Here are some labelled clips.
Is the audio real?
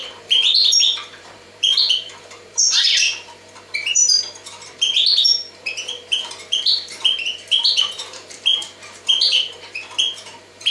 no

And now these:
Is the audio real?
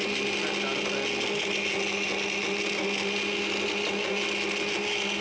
yes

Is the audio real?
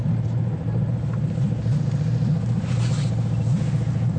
yes